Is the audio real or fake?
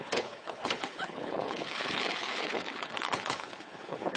fake